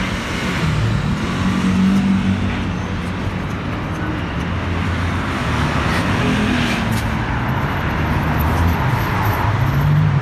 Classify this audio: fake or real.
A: real